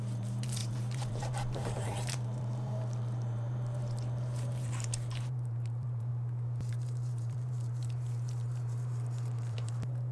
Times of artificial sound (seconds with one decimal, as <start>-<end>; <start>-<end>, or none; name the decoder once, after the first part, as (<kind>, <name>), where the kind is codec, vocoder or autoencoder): 0.0-6.1 (vocoder, BigVGAN v2); 6.7-10.1